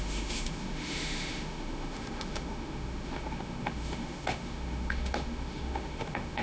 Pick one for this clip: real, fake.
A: fake